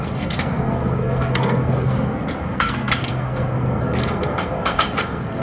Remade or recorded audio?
remade